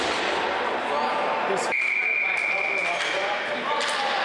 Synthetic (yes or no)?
no